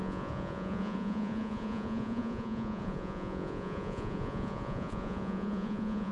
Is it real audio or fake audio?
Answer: fake